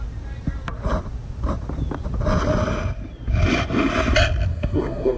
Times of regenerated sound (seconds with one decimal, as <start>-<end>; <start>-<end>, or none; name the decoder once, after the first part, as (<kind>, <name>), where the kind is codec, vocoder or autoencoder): 4.5-5.2 (codec, SNAC)